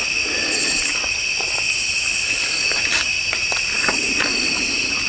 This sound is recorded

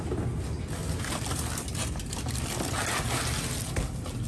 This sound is recorded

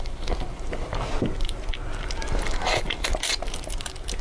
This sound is recorded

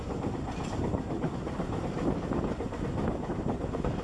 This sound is remade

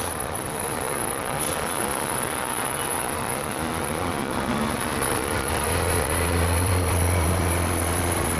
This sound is remade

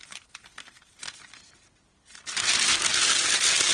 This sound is recorded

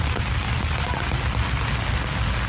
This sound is recorded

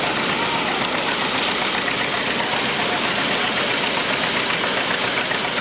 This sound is recorded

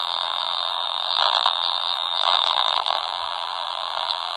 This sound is remade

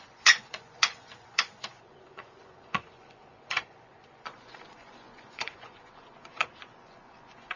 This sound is remade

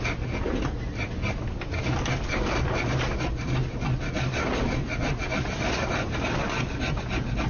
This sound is recorded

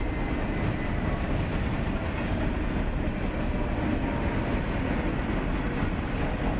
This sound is recorded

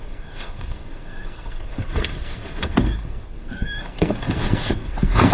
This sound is remade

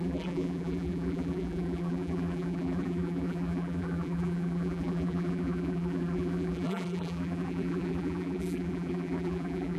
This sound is remade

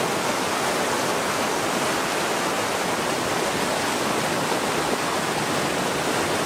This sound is recorded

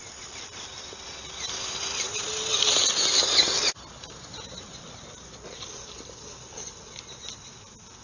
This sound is recorded